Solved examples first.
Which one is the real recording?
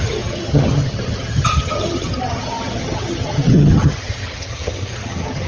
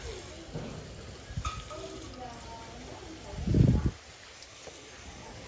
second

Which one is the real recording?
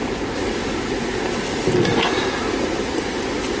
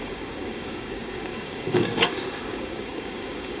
first